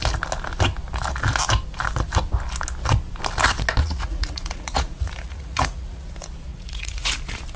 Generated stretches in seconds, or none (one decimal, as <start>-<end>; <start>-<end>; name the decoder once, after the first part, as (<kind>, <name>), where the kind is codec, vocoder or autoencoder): 3.8-6.1 (vocoder, Vocos); 6.5-7.1